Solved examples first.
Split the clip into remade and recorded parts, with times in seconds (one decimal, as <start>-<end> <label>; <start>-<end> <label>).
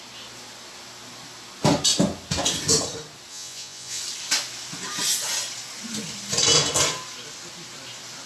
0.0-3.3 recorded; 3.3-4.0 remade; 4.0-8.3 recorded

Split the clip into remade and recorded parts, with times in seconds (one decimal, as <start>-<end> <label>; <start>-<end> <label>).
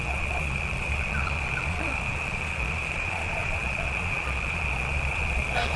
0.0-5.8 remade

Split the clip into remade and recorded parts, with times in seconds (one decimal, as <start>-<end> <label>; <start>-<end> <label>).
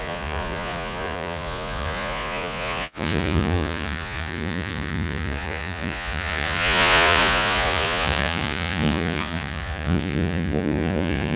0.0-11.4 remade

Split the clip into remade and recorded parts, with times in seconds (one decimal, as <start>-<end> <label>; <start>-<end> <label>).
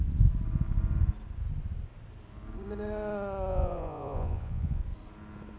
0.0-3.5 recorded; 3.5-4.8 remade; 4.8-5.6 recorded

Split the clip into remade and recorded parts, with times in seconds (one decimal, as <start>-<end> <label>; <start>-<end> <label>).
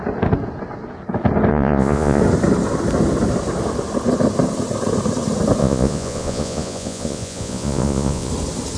0.0-1.5 recorded; 1.5-2.2 remade; 2.2-5.6 recorded; 5.6-8.3 remade; 8.3-8.8 recorded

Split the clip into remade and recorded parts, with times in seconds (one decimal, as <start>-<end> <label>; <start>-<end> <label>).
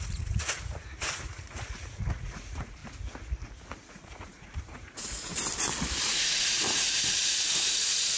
0.0-2.8 remade; 2.8-3.9 recorded; 3.9-5.3 remade; 5.3-6.0 recorded; 6.0-8.2 remade